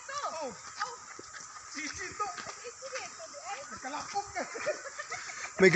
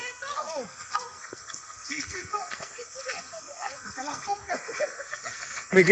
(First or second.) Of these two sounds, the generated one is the second